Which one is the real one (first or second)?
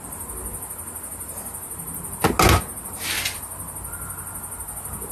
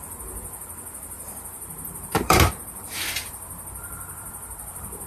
first